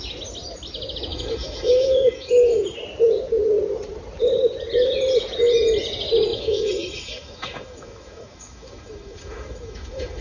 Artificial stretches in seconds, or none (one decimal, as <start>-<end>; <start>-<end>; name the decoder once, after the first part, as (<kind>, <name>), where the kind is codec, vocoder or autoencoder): 1.1-2.6 (autoencoder, DAC-VAE); 6.3-10.2